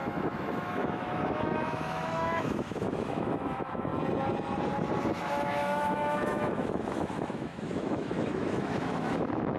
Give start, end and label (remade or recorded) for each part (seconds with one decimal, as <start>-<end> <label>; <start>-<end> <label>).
0.0-3.9 remade; 3.9-5.2 recorded; 5.2-9.6 remade